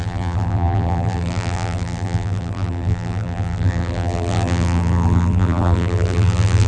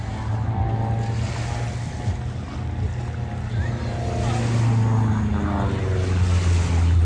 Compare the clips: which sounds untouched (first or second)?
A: second